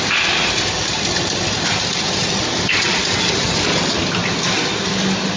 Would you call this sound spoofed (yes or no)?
no